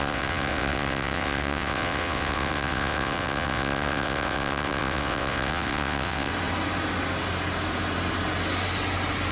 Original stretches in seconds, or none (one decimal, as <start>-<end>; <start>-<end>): 6.3-9.3